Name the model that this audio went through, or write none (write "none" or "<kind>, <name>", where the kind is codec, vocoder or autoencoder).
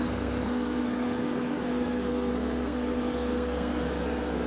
codec, SNAC